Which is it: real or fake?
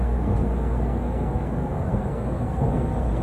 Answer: fake